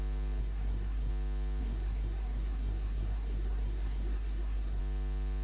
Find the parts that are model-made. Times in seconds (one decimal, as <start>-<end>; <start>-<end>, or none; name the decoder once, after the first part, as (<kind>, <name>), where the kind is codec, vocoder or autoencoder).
0.4-1.1 (codec, SNAC); 1.6-4.8